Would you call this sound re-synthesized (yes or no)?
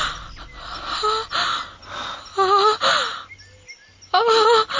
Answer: no